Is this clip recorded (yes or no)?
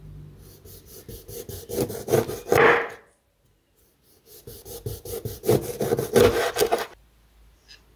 yes